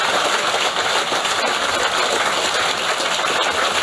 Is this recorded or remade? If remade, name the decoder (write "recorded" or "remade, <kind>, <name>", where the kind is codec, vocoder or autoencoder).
recorded